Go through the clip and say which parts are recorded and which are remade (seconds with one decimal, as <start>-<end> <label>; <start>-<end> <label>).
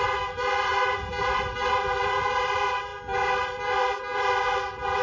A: 0.0-5.0 recorded